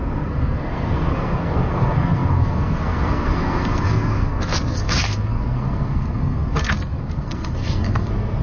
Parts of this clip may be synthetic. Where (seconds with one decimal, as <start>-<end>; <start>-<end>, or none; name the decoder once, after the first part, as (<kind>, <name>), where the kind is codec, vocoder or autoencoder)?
0.0-8.4 (codec, SNAC)